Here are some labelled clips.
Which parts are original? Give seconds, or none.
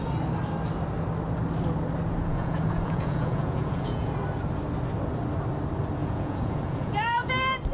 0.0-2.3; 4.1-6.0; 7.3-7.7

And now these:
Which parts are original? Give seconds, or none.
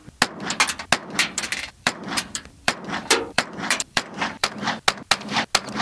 0.0-1.0; 4.5-5.8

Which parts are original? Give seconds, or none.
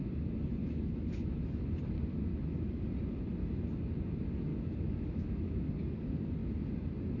0.0-0.6; 1.6-2.3; 2.8-4.5; 5.7-7.2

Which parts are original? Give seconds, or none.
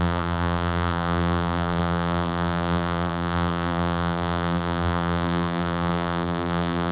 none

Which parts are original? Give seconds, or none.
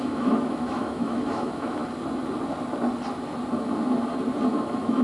1.8-4.5